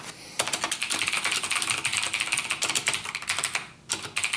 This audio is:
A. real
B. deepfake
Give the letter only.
A